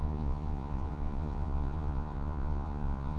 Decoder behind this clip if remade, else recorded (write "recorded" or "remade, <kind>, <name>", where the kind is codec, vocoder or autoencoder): remade, vocoder, Vocos